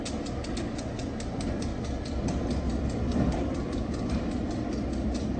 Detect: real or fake real